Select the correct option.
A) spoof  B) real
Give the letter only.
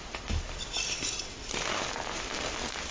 B